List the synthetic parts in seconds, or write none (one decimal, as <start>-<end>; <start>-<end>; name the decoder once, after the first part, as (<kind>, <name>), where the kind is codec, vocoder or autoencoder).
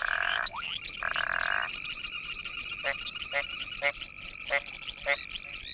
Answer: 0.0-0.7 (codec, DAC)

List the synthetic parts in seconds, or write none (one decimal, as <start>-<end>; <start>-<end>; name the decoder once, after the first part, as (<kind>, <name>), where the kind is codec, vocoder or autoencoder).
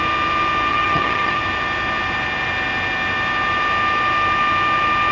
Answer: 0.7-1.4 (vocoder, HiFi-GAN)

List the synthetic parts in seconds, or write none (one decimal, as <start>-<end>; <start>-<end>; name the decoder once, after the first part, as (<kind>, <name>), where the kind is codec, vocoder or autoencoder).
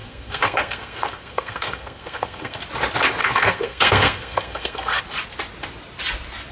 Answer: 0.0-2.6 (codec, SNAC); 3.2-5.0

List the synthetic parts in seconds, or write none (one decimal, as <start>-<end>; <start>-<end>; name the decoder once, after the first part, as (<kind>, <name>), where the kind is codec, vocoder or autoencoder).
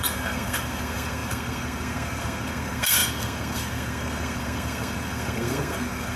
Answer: 0.0-6.2 (codec, SNAC)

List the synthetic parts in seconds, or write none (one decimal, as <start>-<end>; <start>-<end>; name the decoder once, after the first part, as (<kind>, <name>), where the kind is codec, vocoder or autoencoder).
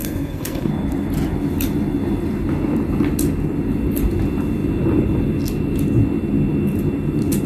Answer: 0.0-0.7 (codec, SNAC)